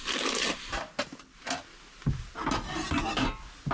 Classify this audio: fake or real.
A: real